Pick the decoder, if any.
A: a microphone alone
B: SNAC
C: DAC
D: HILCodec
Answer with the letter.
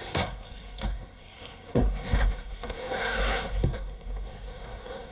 B